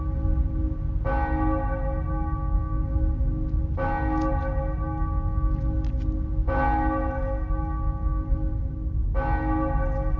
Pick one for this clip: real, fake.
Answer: real